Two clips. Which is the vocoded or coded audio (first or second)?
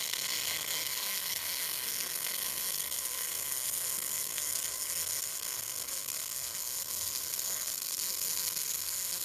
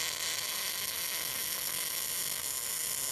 first